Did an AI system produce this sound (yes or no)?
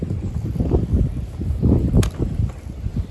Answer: no